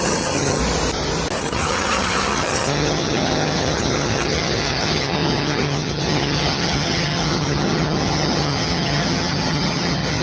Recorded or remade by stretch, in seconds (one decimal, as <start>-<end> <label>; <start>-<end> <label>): 0.0-0.6 remade; 0.6-1.4 recorded; 1.4-10.2 remade

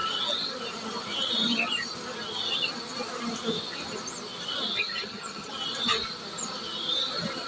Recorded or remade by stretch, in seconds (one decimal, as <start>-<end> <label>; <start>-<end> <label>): 0.0-4.8 recorded; 4.8-5.5 remade; 5.5-7.5 recorded

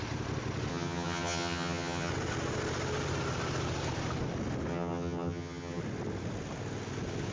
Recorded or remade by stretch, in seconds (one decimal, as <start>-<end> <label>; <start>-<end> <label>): 0.0-0.7 recorded; 0.7-2.1 remade; 2.1-4.7 recorded; 4.7-5.8 remade; 5.8-7.3 recorded

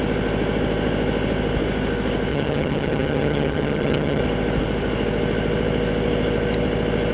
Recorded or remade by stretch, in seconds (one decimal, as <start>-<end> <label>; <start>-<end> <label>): 0.0-2.3 recorded; 2.3-4.2 remade; 4.2-7.1 recorded

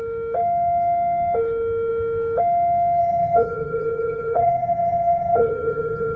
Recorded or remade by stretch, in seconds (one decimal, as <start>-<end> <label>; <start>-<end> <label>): 0.0-3.0 recorded; 3.0-6.2 remade